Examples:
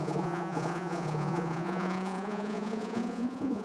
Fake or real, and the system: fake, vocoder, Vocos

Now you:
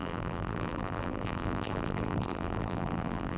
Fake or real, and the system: fake, vocoder, BigVGAN v2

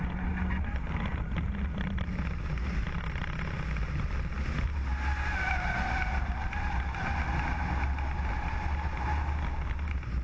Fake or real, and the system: real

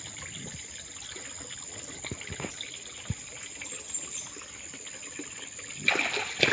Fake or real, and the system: real